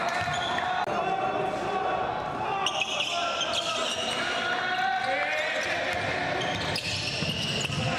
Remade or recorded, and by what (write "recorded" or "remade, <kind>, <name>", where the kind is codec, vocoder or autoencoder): recorded